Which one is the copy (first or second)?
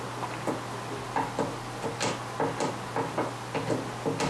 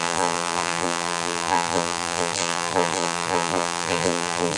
second